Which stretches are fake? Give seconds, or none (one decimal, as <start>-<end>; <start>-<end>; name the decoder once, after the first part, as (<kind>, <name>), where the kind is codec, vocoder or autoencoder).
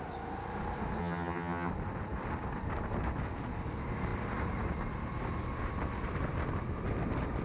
1.0-1.7 (vocoder, HiFi-GAN)